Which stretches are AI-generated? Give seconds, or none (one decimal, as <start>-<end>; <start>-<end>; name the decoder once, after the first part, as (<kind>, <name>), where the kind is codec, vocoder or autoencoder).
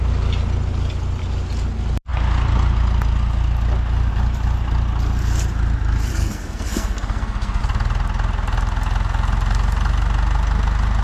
6.1-7.6 (codec, SNAC)